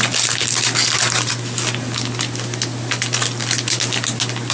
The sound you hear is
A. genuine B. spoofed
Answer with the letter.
A